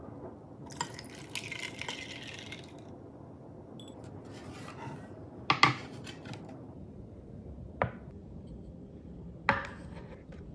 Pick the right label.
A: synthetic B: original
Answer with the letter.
B